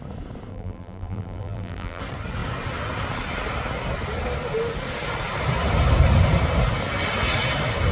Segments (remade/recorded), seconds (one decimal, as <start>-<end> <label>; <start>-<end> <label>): 0.0-0.5 recorded; 0.5-2.0 remade; 2.0-7.9 recorded